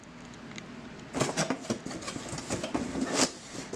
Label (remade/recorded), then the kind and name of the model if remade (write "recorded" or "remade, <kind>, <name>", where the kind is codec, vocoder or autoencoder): recorded